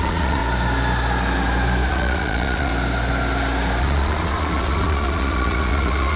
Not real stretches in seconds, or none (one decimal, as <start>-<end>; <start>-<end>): 0.0-0.4; 1.9-2.7; 3.8-6.2